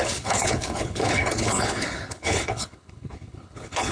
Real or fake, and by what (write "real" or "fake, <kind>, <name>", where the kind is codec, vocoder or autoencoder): fake, codec, HILCodec